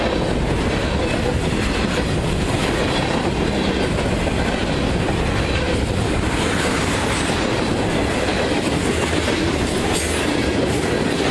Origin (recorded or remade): recorded